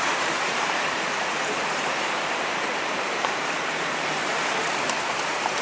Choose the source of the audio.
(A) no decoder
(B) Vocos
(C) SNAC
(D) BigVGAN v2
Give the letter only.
D